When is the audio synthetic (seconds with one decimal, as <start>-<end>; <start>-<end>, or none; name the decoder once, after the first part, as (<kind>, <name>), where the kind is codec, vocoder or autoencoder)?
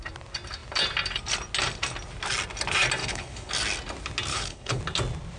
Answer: 3.0-3.5 (codec, HILCodec); 4.3-4.8